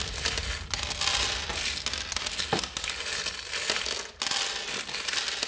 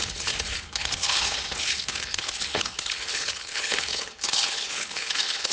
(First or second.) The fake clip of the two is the second